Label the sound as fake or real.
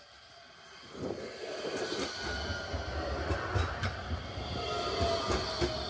real